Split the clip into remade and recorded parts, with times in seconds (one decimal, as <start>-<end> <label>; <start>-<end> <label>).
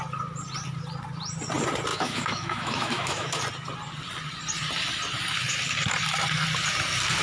0.0-1.9 recorded; 1.9-3.4 remade; 3.4-7.2 recorded